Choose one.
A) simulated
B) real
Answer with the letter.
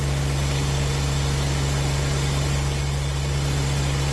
B